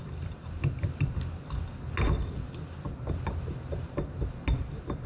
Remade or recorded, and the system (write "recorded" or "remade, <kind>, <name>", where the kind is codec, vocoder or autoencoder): recorded